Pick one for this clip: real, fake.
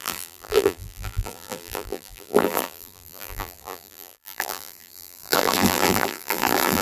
fake